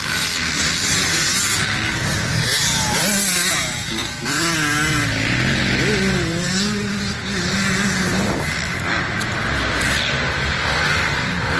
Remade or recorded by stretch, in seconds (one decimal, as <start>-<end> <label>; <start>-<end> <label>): 0.0-11.6 recorded